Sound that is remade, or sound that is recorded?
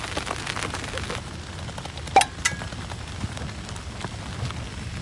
recorded